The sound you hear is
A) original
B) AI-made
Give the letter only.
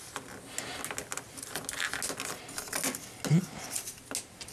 A